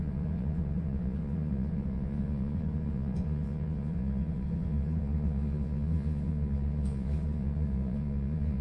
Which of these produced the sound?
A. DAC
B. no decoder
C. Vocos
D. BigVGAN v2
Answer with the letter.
C